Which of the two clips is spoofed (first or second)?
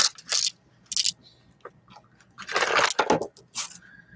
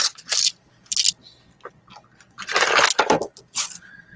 second